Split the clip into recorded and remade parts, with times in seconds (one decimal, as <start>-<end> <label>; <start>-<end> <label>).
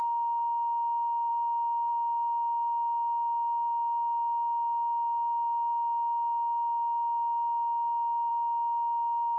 0.0-1.3 remade; 1.3-1.9 recorded; 1.9-8.3 remade; 8.3-9.4 recorded